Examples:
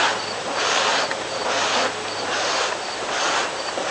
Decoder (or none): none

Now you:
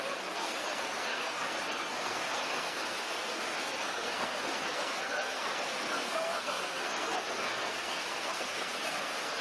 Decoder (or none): codec, SNAC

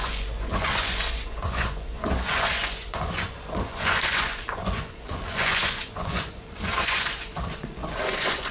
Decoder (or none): vocoder, Vocos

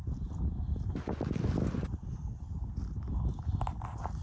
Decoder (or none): none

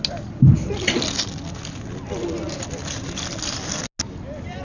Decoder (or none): none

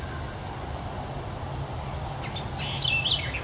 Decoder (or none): none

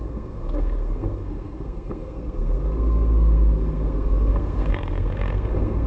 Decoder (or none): codec, SNAC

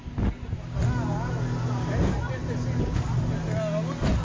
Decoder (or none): none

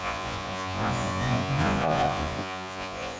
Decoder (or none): vocoder, Vocos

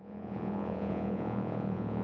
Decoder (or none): vocoder, Vocos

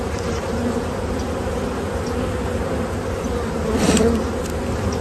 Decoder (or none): none